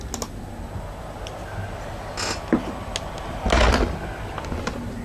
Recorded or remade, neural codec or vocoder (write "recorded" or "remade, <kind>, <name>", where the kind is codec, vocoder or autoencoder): recorded